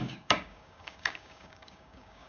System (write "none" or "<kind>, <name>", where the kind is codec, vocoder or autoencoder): codec, DAC